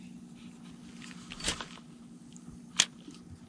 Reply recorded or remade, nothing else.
recorded